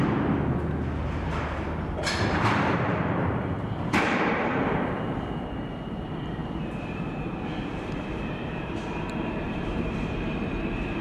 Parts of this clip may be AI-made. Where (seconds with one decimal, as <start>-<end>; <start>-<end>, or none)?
1.1-11.0